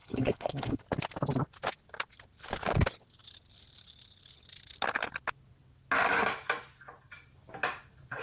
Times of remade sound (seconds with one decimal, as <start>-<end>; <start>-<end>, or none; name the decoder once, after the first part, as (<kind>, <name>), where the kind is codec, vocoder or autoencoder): 0.0-0.8 (codec, HILCodec)